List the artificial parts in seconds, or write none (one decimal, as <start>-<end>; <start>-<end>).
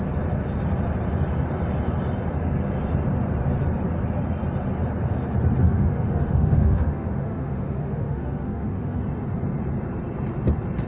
5.6-9.0